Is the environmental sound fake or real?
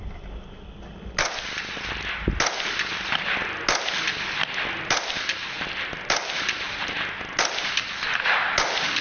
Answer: real